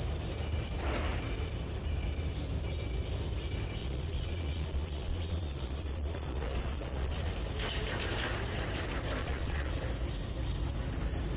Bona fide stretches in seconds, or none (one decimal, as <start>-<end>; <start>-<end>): 0.0-3.8; 7.3-9.2; 9.7-11.4